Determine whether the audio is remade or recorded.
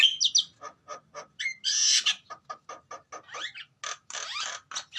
recorded